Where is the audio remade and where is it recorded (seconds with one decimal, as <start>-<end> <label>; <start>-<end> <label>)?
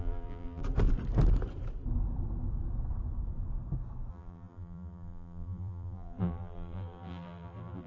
0.0-0.6 remade; 0.6-4.1 recorded; 4.1-7.9 remade